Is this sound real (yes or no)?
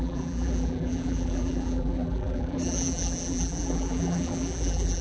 no